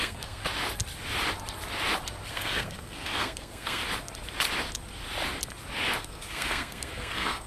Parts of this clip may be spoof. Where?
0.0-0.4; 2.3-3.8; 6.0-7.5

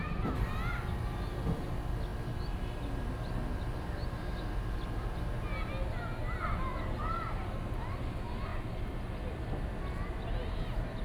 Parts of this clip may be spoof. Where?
none

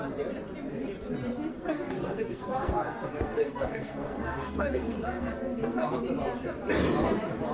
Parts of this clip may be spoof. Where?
1.5-6.0

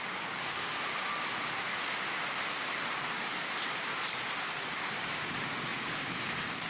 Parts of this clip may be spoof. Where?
0.0-0.9; 3.1-3.9; 4.5-6.7

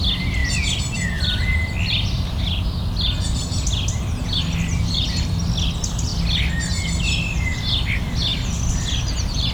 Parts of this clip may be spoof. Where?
none

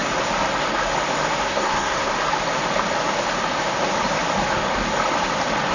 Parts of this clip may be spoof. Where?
1.4-2.1